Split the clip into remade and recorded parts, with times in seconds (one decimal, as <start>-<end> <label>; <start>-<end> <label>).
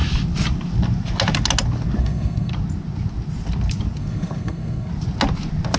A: 0.0-2.0 recorded; 2.0-2.5 remade; 2.5-4.0 recorded; 4.0-4.9 remade; 4.9-5.8 recorded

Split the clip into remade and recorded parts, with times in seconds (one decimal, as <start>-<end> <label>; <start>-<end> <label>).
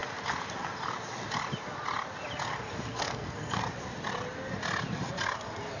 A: 0.0-2.9 recorded; 2.9-3.6 remade; 3.6-5.8 recorded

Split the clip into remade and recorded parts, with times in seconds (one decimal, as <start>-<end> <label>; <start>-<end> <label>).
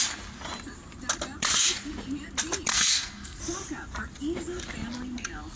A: 0.0-2.7 recorded; 2.7-3.4 remade; 3.4-5.6 recorded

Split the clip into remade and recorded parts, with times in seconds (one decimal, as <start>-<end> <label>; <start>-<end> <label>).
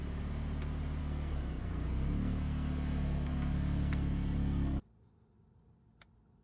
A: 0.0-1.0 recorded; 1.0-4.8 remade; 4.8-6.4 recorded